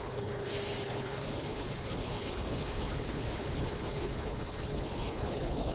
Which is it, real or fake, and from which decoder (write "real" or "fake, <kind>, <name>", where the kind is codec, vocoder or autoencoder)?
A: fake, codec, HILCodec